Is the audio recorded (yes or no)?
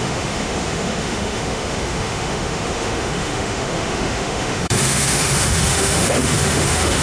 no